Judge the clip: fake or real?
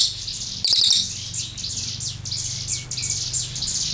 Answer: real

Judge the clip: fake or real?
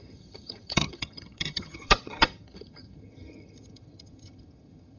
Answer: fake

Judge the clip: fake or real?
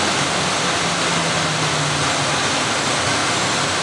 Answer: real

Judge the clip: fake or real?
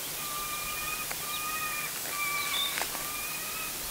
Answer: real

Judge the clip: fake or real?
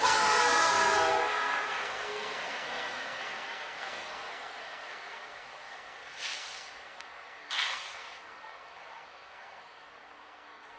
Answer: fake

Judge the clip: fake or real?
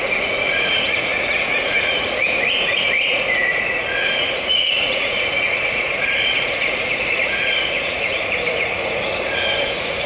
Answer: fake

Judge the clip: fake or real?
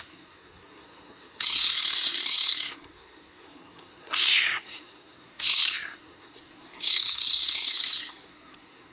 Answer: fake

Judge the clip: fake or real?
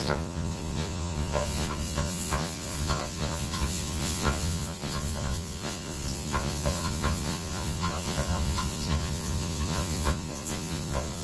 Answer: fake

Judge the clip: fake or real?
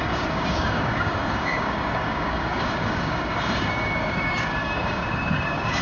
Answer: fake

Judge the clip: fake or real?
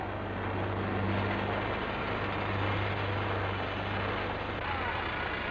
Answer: real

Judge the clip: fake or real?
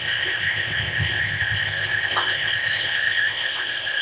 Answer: fake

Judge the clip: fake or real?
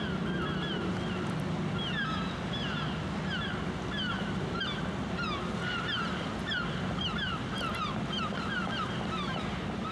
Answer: real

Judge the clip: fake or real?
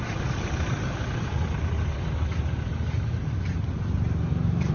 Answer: fake